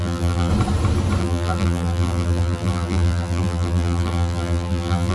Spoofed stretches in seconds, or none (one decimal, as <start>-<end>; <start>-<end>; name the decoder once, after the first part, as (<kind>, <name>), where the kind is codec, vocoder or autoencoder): 0.0-0.5 (vocoder, BigVGAN v2); 1.2-5.1